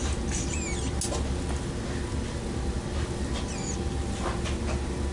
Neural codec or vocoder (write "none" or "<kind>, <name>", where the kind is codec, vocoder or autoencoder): none